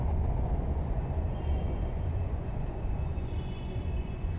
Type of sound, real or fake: fake